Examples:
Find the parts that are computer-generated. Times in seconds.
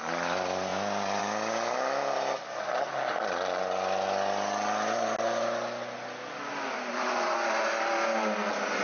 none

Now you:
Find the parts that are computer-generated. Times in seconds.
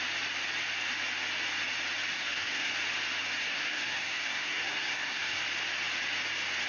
2.1-2.7 (codec, SNAC); 3.4-5.4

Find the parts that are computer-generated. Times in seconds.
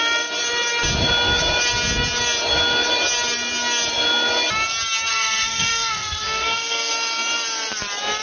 5.1-6.9 (codec, SNAC)